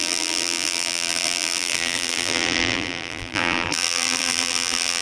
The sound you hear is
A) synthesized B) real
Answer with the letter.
A